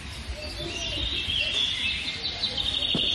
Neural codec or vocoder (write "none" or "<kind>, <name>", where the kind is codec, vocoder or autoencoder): none